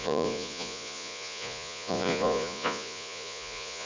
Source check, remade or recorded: remade